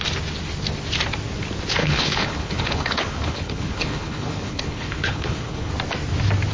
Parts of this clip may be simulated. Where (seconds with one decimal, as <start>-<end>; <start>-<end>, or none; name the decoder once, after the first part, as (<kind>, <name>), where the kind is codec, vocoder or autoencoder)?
1.8-5.7 (codec, HILCodec)